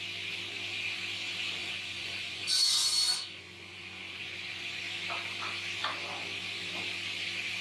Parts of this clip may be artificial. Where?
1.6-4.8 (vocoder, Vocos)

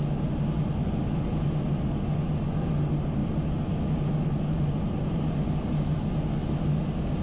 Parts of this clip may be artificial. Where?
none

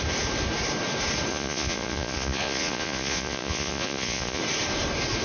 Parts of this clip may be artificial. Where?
1.3-4.4 (vocoder, Vocos)

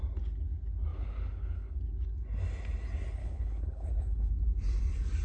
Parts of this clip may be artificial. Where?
0.9-1.8 (codec, HILCodec); 3.2-4.3